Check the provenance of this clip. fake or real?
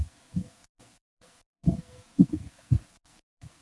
fake